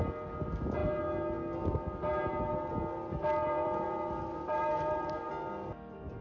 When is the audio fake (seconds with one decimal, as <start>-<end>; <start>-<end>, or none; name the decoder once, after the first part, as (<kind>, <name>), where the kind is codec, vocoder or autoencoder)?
3.4-5.3 (vocoder, BigVGAN v2)